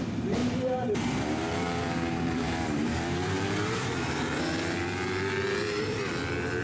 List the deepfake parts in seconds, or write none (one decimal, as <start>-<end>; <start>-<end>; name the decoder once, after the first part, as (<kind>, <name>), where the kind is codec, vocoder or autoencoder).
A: 0.4-4.4 (vocoder, BigVGAN v2); 5.6-6.1